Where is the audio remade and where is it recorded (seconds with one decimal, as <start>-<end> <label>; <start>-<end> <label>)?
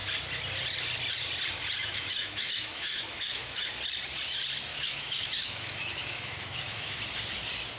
0.0-1.8 recorded; 1.8-3.7 remade; 3.7-4.7 recorded; 4.7-7.0 remade; 7.0-7.8 recorded